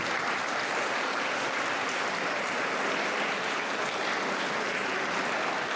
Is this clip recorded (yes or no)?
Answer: yes